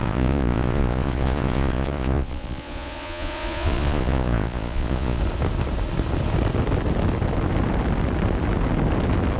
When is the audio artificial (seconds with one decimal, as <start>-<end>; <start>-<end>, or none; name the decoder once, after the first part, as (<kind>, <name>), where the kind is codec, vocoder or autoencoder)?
0.0-5.2 (vocoder, Vocos)